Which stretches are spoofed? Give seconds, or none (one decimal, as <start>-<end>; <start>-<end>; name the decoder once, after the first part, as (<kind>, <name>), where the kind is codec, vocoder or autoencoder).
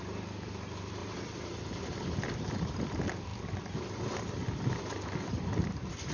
0.0-6.1 (vocoder, BigVGAN v2)